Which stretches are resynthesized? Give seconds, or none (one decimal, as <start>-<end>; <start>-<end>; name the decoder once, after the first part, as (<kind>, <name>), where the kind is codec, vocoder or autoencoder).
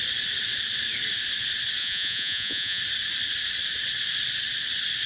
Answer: 1.8-2.8 (vocoder, Vocos)